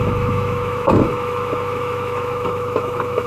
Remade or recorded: remade